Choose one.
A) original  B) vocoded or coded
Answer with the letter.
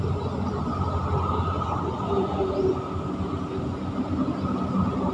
A